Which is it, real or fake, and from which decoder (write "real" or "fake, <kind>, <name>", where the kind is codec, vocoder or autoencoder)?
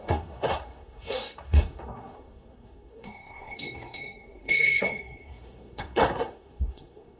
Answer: fake, codec, SNAC